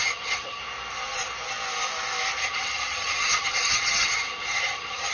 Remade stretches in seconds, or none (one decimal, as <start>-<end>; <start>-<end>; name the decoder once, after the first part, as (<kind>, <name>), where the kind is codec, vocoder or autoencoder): 0.0-0.6 (vocoder, HiFi-GAN); 2.4-5.1